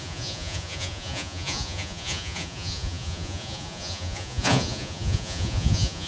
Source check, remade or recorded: remade